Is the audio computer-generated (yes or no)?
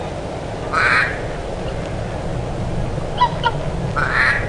no